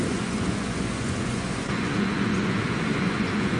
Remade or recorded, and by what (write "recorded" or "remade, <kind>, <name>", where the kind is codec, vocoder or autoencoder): remade, vocoder, Vocos